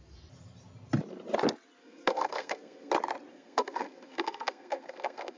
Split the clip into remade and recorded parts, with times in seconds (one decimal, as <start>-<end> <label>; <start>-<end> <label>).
0.0-1.8 recorded; 1.8-2.9 remade; 2.9-3.3 recorded; 3.3-5.4 remade